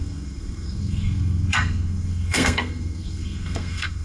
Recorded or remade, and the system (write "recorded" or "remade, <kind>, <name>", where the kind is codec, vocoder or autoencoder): remade, codec, SNAC